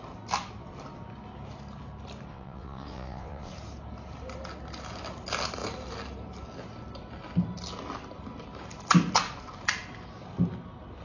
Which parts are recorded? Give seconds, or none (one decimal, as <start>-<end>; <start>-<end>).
0.0-2.3; 3.5-11.0